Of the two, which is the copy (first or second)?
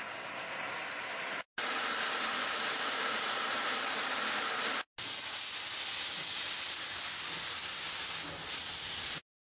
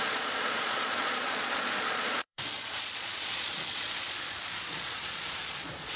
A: second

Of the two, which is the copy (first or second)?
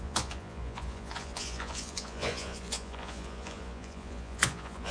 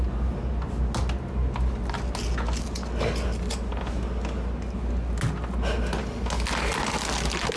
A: first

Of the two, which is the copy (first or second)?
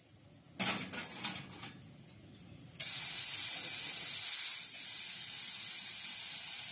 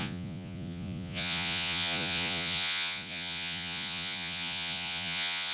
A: second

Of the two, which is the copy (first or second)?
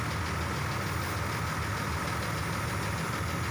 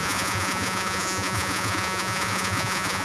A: second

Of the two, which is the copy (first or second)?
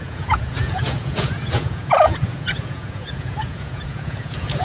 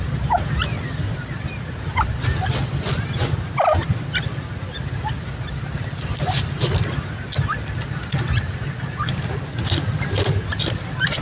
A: first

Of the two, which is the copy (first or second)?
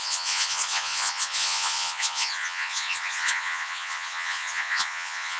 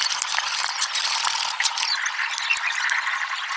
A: first